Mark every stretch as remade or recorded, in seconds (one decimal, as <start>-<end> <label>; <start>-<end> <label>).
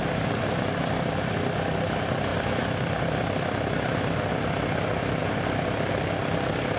0.0-6.8 recorded